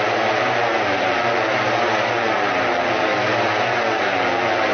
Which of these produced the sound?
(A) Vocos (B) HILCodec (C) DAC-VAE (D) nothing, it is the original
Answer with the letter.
D